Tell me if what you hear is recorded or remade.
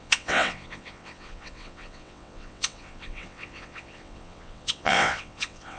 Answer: remade